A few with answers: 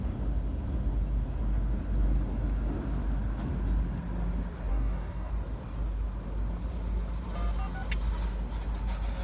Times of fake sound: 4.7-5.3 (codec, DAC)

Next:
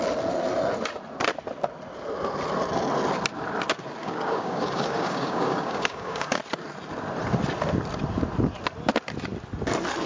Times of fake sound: 4.0-6.4 (codec, DAC)

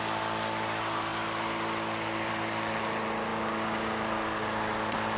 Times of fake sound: 3.3-4.0 (codec, DAC)

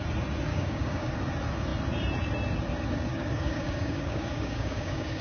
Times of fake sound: 0.5-1.1 (codec, DAC); 3.1-5.2

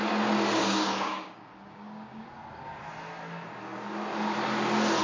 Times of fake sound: 0.6-2.2 (codec, DAC)

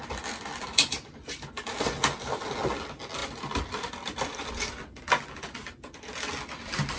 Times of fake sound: none

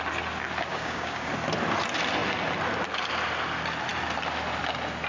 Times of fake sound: 0.7-1.3 (codec, DAC)